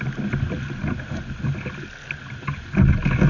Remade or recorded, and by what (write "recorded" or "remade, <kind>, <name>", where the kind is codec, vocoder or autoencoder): recorded